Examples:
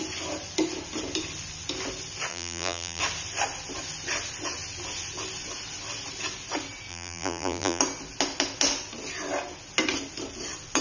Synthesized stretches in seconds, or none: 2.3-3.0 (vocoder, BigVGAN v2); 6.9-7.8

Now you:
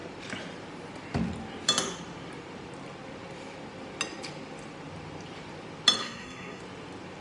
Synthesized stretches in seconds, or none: 6.0-6.6 (codec, SNAC)

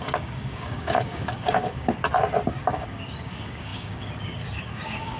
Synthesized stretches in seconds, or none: 0.0-2.0 (codec, DAC); 2.6-5.2